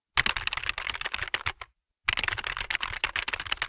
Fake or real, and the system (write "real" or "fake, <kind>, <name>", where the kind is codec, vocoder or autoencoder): real